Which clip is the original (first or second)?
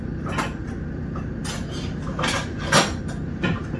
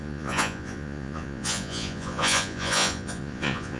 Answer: first